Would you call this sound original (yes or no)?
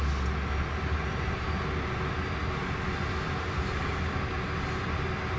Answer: yes